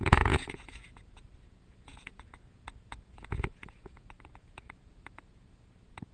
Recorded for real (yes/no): no